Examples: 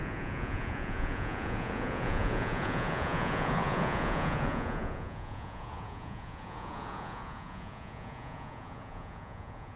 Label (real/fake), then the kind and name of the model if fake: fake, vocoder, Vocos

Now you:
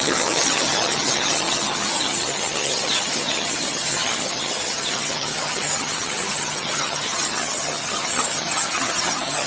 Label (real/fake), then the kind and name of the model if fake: fake, vocoder, HiFi-GAN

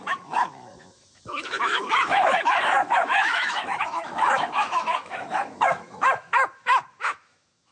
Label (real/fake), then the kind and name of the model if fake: fake, autoencoder, DAC-VAE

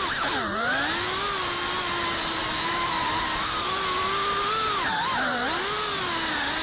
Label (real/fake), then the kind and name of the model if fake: real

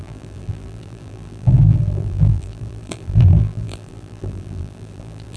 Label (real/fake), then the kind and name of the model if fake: fake, vocoder, BigVGAN v2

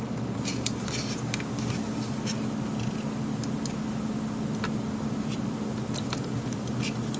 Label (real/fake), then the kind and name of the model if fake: real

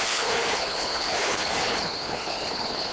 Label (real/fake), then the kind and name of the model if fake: fake, codec, HILCodec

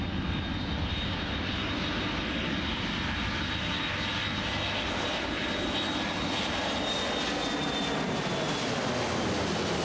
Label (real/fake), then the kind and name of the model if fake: real